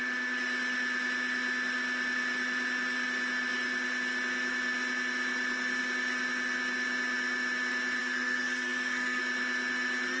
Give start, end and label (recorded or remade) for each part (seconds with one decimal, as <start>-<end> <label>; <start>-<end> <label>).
0.0-8.0 recorded; 8.0-9.2 remade; 9.2-10.2 recorded